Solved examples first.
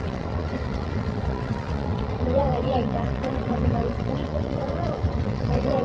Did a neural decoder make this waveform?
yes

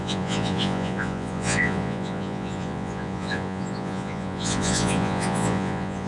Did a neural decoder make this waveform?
yes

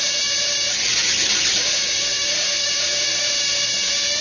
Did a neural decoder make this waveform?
no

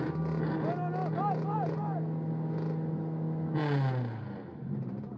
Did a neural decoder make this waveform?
no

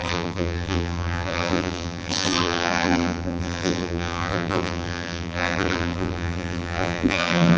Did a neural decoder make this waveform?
yes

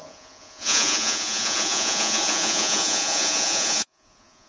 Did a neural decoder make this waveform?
yes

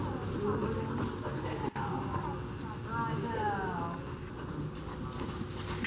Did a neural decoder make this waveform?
no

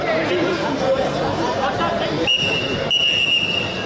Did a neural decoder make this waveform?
no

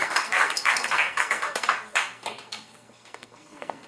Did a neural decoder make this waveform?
yes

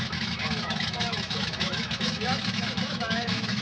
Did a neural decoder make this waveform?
yes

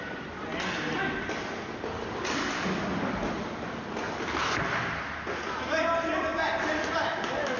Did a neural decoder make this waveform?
no